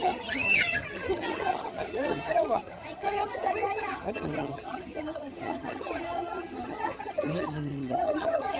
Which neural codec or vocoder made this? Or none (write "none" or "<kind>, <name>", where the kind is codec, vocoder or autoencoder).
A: vocoder, HiFi-GAN